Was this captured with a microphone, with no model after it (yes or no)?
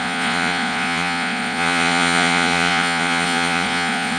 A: no